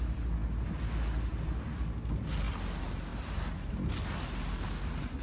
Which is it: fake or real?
real